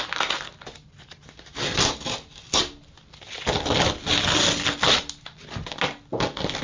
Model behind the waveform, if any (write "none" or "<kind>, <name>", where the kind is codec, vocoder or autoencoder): none